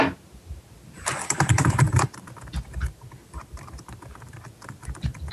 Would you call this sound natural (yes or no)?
yes